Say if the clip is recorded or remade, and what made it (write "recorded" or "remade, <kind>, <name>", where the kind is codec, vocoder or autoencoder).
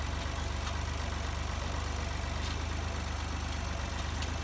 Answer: recorded